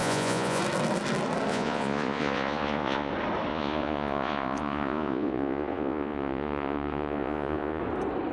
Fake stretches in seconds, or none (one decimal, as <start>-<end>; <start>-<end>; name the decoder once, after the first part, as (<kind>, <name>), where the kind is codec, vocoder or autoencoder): 0.0-0.6 (vocoder, Vocos); 1.5-3.1; 3.5-7.8